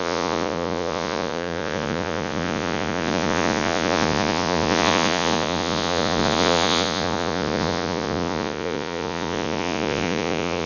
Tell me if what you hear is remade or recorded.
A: remade